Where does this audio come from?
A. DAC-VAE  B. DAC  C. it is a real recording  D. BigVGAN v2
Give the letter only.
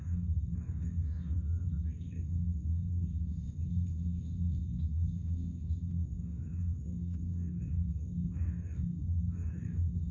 B